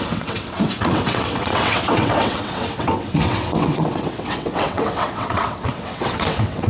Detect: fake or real fake